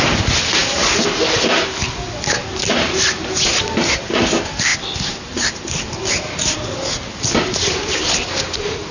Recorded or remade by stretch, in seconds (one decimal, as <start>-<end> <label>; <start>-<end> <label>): 0.0-8.9 recorded